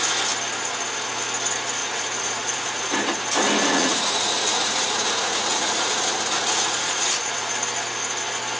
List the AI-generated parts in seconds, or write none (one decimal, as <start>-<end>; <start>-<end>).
1.8-2.9; 3.7-7.5